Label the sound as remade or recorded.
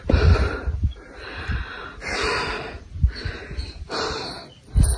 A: recorded